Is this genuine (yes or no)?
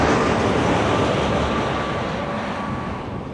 yes